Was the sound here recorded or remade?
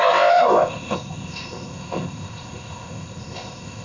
remade